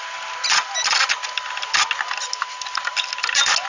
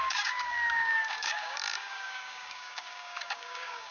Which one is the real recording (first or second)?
first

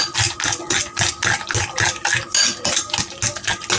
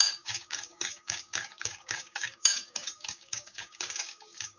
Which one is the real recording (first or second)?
first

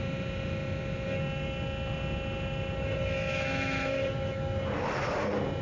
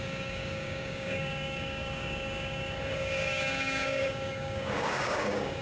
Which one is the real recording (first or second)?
first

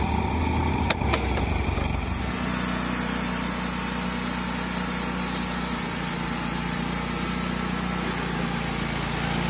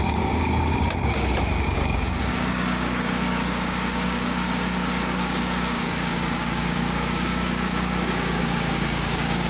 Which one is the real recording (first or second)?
first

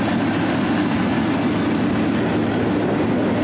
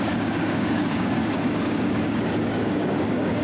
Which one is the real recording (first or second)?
first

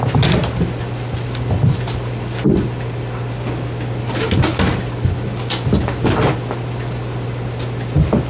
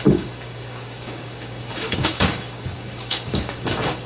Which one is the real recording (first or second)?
first